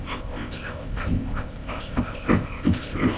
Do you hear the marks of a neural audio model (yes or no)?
yes